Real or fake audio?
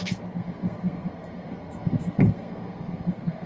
fake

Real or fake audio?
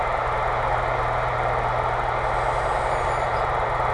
real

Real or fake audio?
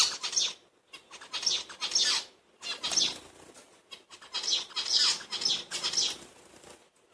real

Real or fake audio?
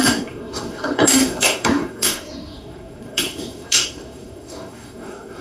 fake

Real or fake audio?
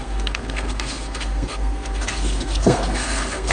fake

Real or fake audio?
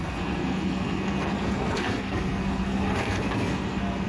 fake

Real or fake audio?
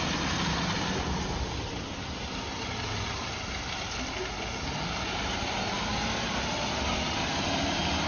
real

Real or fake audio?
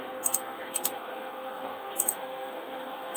fake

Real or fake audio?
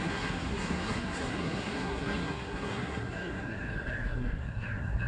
fake